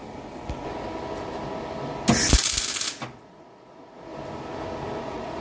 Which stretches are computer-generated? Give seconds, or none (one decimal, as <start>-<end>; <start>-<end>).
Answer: 3.2-4.1; 5.0-5.4